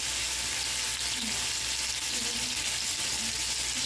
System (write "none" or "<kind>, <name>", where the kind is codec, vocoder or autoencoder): none